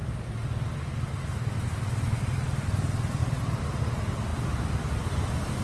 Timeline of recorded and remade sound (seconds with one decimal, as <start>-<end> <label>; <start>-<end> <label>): 0.0-5.6 recorded